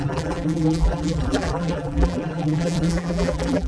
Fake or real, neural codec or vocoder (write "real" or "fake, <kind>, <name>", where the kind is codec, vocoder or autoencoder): fake, vocoder, BigVGAN v2